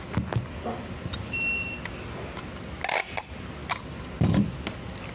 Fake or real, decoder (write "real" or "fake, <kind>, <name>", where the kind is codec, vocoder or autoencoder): real